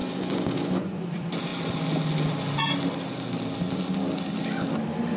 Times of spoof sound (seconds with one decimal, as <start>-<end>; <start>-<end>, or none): 0.0-1.0